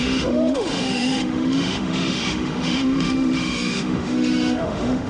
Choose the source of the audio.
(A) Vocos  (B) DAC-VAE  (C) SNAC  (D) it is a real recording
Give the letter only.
B